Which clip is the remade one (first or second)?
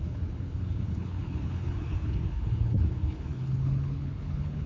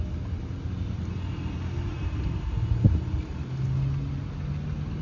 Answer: first